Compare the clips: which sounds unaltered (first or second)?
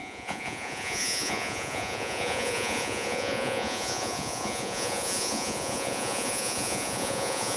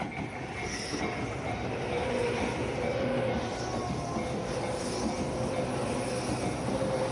second